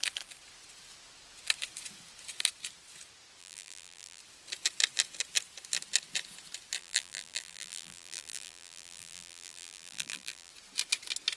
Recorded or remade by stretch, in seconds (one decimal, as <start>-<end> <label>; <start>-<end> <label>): 0.0-3.4 recorded; 3.4-4.2 remade; 4.2-6.8 recorded; 6.8-10.5 remade; 10.5-11.4 recorded

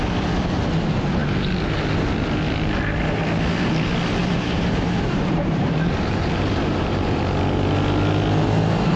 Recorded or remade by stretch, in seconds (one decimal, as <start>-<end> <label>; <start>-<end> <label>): 0.0-4.2 recorded; 4.2-7.2 remade; 7.2-9.0 recorded

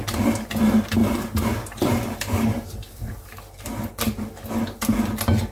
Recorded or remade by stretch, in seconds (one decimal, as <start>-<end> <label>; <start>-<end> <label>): 0.0-1.0 recorded; 1.0-3.9 remade; 3.9-5.5 recorded

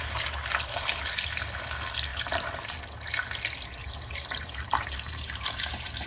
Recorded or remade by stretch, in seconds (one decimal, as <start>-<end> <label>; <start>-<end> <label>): 0.0-2.1 recorded; 2.1-2.6 remade; 2.6-3.8 recorded; 3.8-6.1 remade

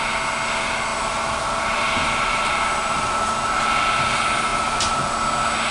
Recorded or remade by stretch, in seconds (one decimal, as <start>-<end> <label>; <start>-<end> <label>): 0.0-0.9 recorded; 0.9-3.3 remade; 3.3-4.5 recorded; 4.5-5.1 remade; 5.1-5.7 recorded